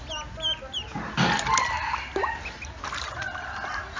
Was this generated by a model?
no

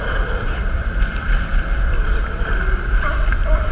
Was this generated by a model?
yes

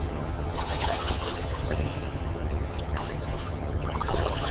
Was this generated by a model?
yes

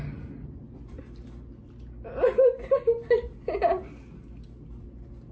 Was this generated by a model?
no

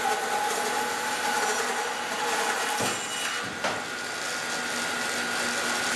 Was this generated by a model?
no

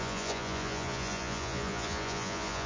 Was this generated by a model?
yes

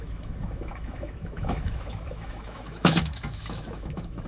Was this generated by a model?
yes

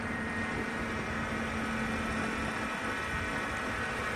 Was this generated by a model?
no